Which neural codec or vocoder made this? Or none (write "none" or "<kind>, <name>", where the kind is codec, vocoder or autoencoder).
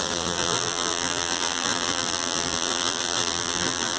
vocoder, BigVGAN v2